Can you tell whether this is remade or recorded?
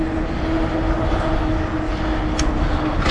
recorded